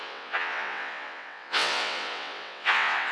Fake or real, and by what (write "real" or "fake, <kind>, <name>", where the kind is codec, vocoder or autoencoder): fake, vocoder, WaveNeXt